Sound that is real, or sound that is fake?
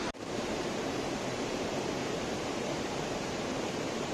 fake